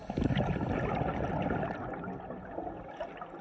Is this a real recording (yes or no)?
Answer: yes